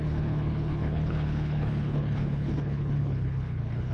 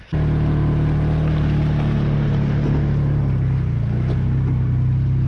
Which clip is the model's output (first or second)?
first